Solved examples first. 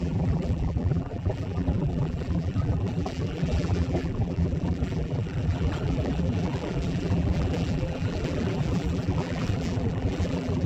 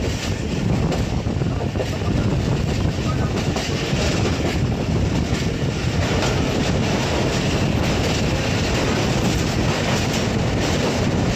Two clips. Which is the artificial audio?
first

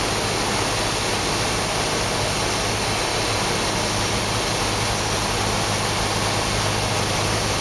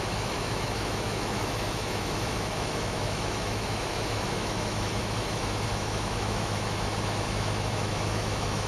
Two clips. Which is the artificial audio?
second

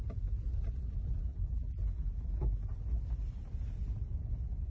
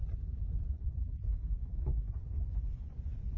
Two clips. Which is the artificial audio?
second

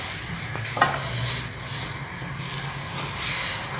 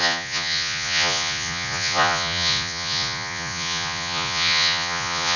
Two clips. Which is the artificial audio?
second